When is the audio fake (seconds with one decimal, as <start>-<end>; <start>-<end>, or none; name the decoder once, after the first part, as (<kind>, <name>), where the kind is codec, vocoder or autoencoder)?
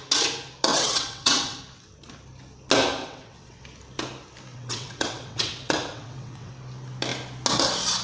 0.7-1.6 (vocoder, WaveNeXt); 3.0-3.6; 4.5-6.5